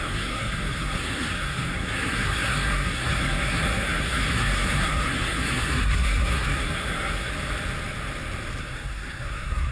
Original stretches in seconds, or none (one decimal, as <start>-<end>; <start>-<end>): 7.3-8.6